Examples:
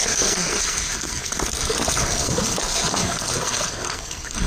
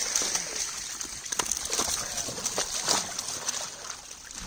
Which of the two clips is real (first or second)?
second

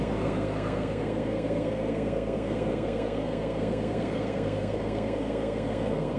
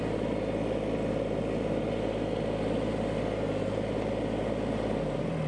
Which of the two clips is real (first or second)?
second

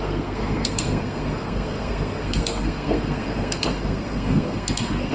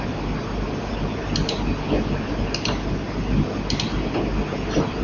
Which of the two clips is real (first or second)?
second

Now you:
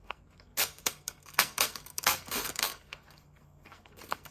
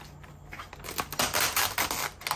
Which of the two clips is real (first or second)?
second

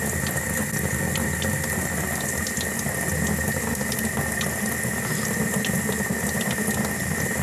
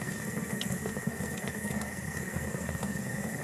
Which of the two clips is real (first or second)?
first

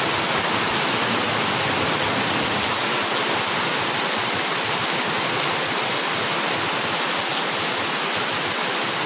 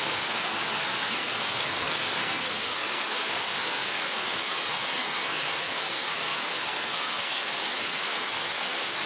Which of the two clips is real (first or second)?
first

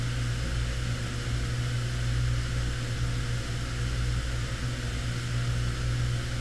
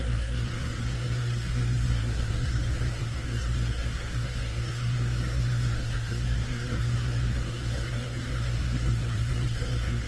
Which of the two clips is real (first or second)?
first